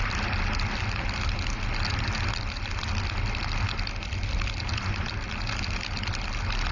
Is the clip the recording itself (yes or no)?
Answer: yes